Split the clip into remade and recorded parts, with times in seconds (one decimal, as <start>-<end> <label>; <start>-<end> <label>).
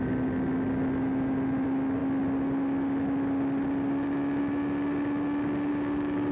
0.0-5.7 recorded; 5.7-6.3 remade